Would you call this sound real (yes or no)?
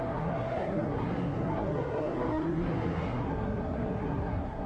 no